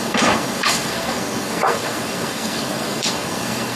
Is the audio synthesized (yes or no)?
yes